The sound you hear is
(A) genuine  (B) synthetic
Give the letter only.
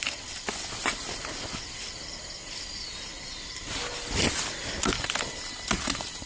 A